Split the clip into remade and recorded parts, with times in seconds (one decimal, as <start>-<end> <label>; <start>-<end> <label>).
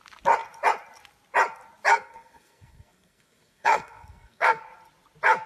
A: 0.0-1.9 recorded; 1.9-4.6 remade; 4.6-5.5 recorded